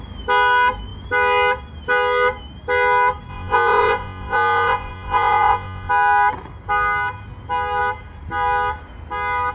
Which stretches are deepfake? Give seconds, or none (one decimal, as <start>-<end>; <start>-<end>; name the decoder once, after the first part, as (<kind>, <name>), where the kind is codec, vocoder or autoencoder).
3.3-5.9 (vocoder, Vocos)